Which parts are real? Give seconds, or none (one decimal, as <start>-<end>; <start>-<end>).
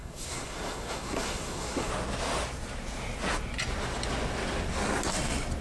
1.9-5.6